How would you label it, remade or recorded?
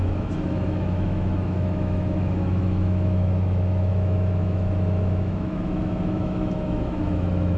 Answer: remade